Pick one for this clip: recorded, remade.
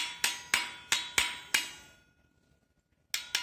recorded